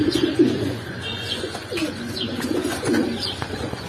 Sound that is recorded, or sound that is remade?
remade